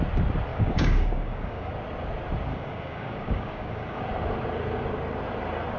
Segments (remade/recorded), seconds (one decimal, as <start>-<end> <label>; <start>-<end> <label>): 0.0-0.5 recorded; 0.5-1.7 remade; 1.7-2.5 recorded; 2.5-4.0 remade; 4.0-5.8 recorded